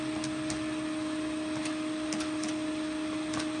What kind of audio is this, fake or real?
real